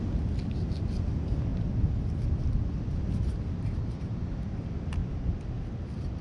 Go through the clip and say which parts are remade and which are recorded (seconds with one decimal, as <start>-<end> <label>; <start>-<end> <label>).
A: 0.0-6.2 recorded